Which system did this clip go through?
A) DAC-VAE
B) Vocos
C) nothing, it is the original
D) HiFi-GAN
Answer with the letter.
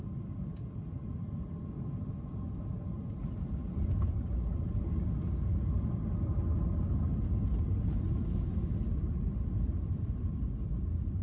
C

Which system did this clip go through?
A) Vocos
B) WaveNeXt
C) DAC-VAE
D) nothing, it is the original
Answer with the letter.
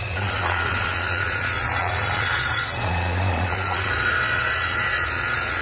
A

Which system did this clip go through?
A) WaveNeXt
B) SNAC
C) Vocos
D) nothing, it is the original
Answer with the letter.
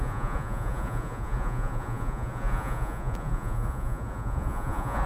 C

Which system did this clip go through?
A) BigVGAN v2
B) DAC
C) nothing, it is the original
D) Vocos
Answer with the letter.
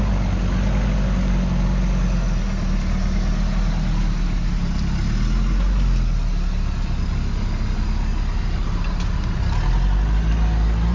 C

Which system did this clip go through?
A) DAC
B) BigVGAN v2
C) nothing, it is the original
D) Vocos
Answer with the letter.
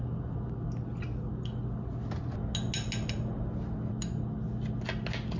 C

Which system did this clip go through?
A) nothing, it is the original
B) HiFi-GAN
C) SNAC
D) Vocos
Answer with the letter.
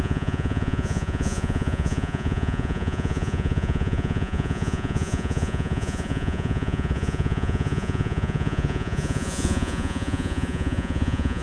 D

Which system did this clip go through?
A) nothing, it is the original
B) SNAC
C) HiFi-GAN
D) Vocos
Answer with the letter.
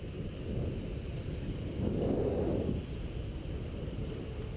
A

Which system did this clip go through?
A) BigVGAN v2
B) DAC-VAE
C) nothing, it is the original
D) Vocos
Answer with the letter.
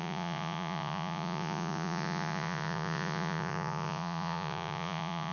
D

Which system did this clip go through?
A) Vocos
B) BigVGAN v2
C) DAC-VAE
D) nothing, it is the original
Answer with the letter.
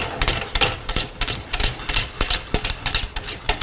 D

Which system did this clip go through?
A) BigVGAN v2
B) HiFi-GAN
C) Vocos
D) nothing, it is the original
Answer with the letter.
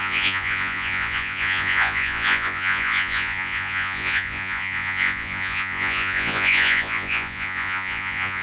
C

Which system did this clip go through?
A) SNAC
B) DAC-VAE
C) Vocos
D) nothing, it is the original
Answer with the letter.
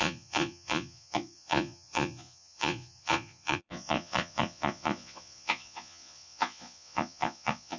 C